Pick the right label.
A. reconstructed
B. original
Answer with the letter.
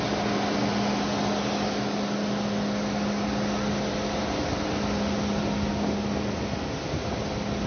B